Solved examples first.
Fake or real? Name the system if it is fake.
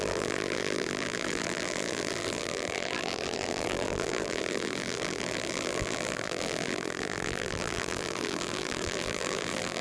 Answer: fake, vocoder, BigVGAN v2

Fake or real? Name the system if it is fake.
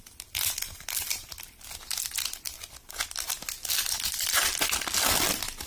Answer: real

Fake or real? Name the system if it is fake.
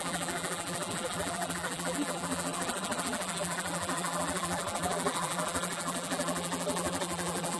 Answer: fake, vocoder, BigVGAN v2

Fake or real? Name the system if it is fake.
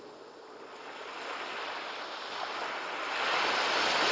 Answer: real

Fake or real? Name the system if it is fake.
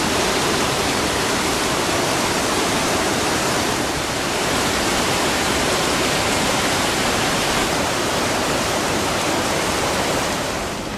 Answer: fake, vocoder, BigVGAN v2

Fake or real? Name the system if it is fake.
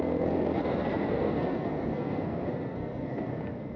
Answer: fake, codec, SNAC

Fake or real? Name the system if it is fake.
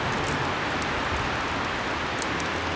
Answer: real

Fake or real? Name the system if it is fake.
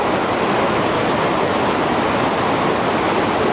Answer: real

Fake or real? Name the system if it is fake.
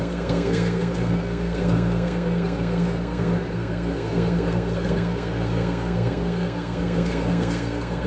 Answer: fake, codec, SNAC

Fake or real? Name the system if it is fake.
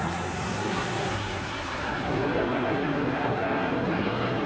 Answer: fake, codec, SNAC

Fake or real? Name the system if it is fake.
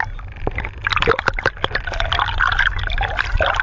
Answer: real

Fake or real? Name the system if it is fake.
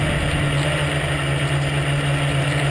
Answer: real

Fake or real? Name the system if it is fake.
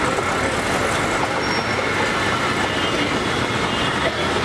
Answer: real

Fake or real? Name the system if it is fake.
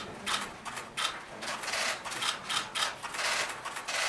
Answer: real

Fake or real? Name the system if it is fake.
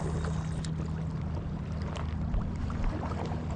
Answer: real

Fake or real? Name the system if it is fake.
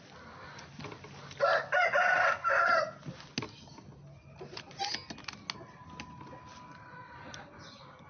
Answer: real